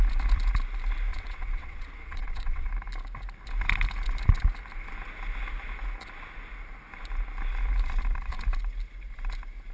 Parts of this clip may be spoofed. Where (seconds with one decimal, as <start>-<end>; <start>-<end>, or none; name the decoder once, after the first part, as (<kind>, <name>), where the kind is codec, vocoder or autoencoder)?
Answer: 1.1-2.7 (vocoder, WaveNeXt)